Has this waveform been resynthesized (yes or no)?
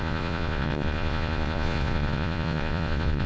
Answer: yes